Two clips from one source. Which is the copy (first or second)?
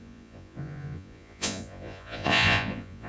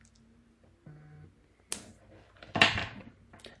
first